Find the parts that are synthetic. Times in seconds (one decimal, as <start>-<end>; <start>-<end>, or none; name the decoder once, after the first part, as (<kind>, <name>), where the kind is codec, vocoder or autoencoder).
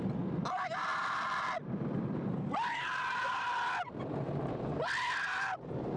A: 0.9-3.9 (vocoder, BigVGAN v2)